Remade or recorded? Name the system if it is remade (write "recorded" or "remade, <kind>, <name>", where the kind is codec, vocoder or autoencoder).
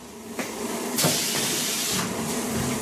recorded